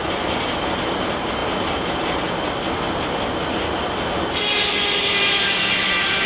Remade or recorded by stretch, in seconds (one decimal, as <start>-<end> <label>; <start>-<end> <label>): 0.0-6.3 recorded